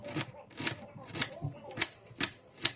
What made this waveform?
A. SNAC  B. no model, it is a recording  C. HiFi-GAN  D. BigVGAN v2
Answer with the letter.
B